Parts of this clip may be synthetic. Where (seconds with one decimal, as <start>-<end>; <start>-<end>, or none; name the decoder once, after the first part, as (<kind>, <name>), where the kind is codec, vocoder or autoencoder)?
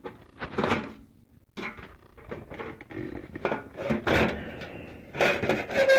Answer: 3.2-4.0 (autoencoder, DAC-VAE)